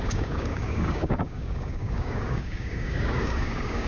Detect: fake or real fake